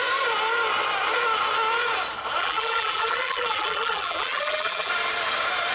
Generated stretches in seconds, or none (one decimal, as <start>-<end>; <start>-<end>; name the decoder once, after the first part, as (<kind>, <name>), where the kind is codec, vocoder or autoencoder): 2.4-4.9 (vocoder, BigVGAN v2)